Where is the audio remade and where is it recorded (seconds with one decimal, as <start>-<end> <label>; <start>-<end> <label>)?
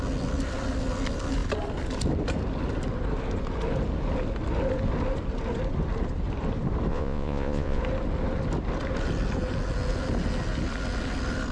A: 0.0-6.9 recorded; 6.9-7.8 remade; 7.8-11.5 recorded